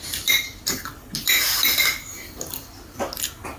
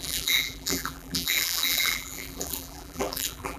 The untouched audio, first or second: first